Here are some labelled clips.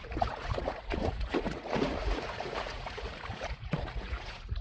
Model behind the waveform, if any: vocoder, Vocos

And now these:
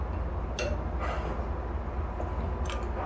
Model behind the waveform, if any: none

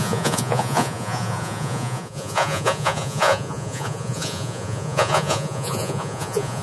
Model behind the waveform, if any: vocoder, Vocos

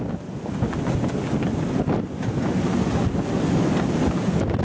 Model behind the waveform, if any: none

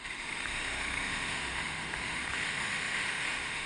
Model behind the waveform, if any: autoencoder, DAC-VAE